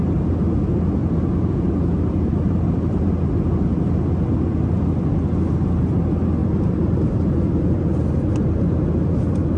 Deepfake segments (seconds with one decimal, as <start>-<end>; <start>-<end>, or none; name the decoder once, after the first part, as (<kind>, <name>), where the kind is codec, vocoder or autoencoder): 1.0-3.1 (vocoder, BigVGAN v2); 6.4-8.2